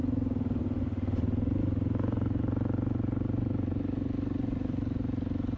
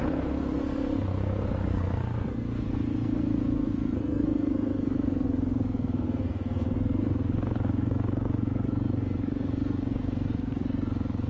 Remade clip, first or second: second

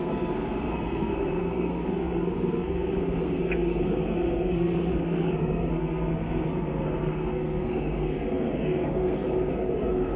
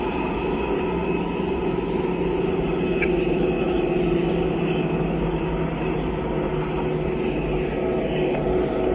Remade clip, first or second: first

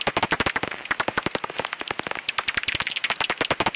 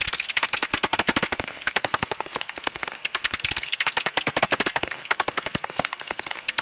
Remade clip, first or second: second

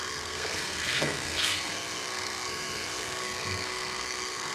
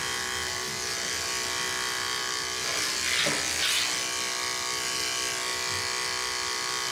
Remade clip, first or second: first